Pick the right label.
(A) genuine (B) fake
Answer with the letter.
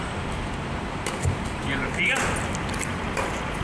A